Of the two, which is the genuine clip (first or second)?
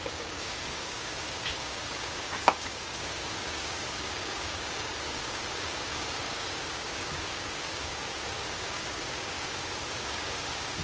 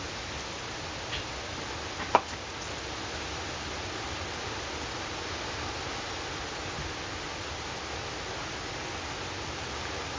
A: second